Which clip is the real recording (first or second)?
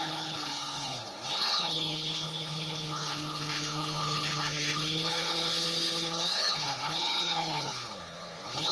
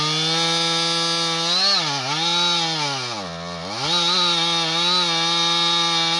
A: second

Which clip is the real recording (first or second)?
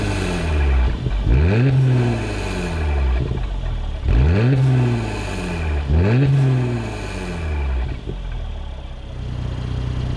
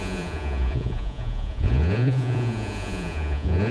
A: first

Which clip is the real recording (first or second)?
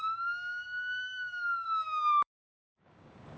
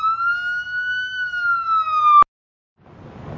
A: second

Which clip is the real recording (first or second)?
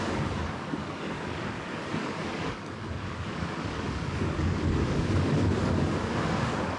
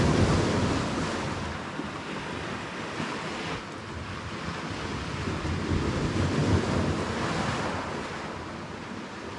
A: second